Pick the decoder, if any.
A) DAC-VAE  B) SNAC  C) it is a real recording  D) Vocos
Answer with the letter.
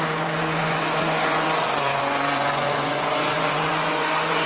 D